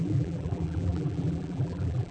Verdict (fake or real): fake